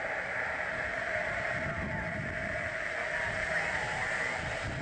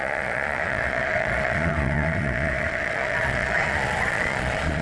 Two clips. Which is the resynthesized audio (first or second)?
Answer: second